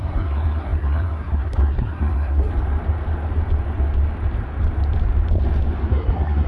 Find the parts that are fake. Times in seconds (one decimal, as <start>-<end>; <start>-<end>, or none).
0.0-2.5; 5.9-6.5